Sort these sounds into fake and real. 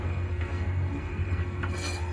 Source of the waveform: fake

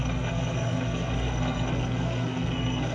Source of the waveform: fake